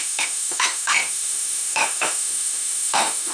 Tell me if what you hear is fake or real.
fake